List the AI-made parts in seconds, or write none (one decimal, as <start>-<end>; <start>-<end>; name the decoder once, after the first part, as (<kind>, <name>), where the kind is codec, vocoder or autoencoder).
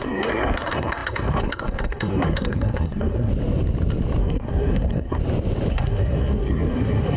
0.0-3.3 (codec, SNAC); 4.2-5.2; 5.7-7.2